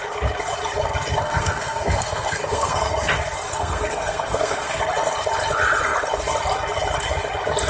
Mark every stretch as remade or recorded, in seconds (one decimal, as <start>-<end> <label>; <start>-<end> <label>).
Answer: 0.0-1.2 recorded; 1.2-2.9 remade; 2.9-3.5 recorded; 3.5-4.8 remade; 4.8-7.7 recorded